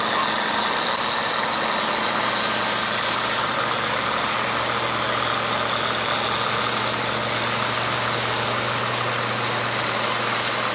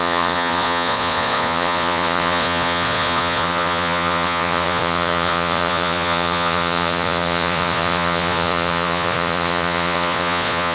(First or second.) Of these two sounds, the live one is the first